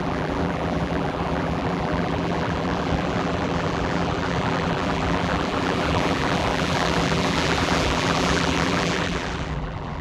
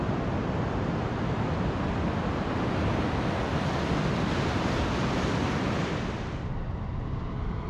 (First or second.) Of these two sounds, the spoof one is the first